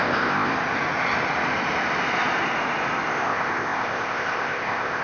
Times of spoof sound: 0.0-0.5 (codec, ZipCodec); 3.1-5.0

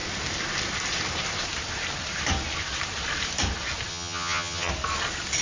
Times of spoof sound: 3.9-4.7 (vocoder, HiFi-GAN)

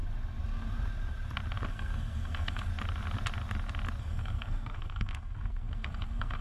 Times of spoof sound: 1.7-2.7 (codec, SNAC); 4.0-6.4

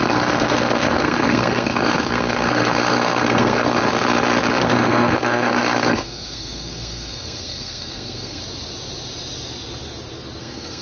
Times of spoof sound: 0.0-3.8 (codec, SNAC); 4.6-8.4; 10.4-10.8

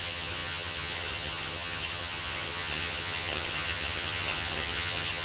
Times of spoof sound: 0.0-5.2 (vocoder, HiFi-GAN)

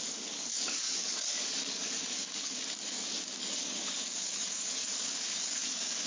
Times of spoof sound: 0.0-6.1 (codec, DAC)

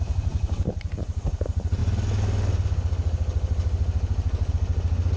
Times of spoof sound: none

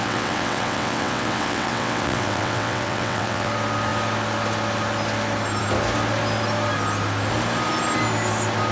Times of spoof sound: 0.0-3.5 (vocoder, WaveNeXt)